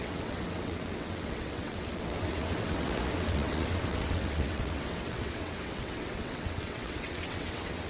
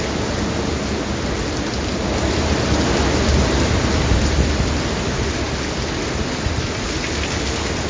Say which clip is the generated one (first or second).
first